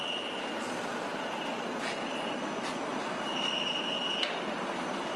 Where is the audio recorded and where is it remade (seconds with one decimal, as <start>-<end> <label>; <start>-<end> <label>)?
0.0-1.1 recorded; 1.1-1.9 remade; 1.9-3.3 recorded; 3.3-4.1 remade; 4.1-5.2 recorded